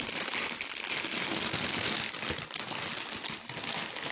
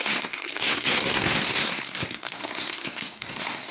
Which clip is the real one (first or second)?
first